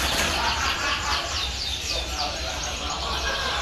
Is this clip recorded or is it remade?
remade